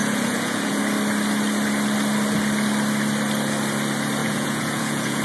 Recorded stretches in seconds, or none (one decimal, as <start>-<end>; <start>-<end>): 0.8-4.2